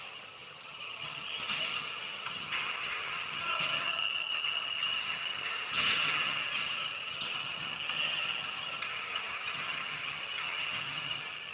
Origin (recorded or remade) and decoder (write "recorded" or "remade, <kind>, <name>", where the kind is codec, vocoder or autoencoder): remade, vocoder, HiFi-GAN